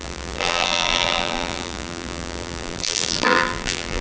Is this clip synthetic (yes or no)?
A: yes